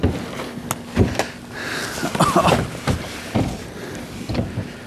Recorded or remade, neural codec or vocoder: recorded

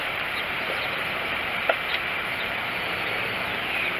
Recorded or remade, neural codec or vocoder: remade, vocoder, BigVGAN v2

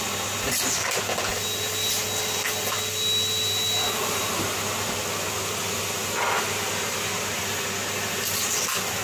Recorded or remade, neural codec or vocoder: recorded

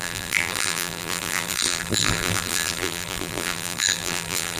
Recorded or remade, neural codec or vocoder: remade, vocoder, BigVGAN v2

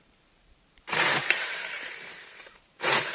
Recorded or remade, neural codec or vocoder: remade, vocoder, BigVGAN v2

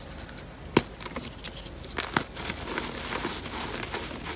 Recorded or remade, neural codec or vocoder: recorded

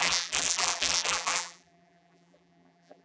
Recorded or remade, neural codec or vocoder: remade, vocoder, BigVGAN v2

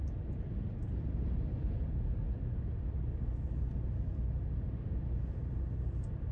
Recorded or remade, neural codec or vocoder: recorded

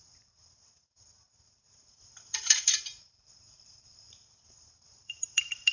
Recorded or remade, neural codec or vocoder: remade, vocoder, BigVGAN v2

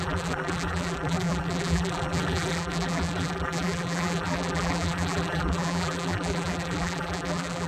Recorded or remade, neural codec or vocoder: remade, vocoder, BigVGAN v2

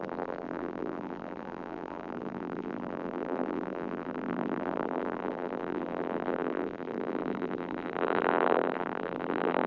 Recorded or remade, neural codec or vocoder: remade, vocoder, BigVGAN v2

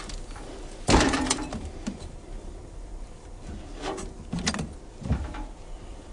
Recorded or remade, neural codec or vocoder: remade, vocoder, BigVGAN v2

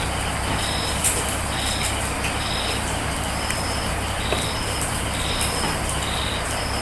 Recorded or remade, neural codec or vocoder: remade, vocoder, BigVGAN v2